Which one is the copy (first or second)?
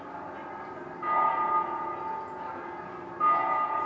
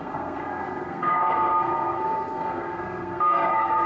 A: second